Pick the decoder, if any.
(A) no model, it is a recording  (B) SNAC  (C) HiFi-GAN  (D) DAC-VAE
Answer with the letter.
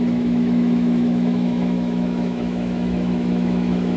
D